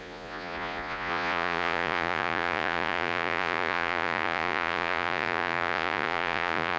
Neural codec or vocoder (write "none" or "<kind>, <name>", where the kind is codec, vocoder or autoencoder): vocoder, Vocos